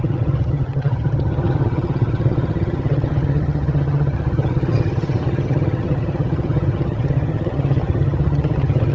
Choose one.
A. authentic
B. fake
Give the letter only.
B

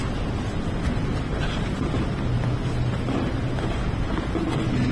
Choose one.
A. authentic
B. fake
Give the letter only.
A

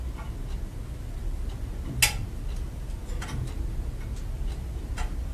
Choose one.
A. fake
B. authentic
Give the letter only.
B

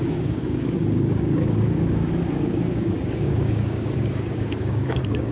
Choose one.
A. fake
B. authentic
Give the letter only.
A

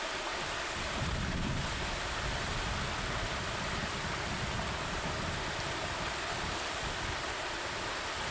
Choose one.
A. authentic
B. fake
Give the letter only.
A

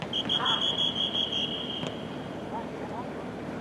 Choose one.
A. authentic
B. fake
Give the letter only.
B